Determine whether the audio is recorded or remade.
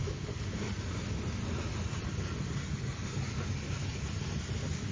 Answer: recorded